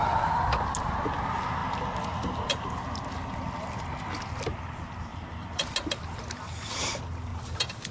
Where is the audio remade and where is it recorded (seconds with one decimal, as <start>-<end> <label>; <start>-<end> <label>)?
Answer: 0.0-5.1 recorded; 5.1-5.7 remade; 5.7-7.3 recorded; 7.3-7.9 remade